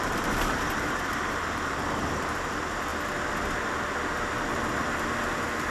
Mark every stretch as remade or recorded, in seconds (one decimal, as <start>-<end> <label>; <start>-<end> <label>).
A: 0.0-2.9 remade; 2.9-5.7 recorded